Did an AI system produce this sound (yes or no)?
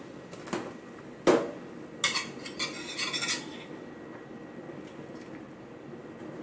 no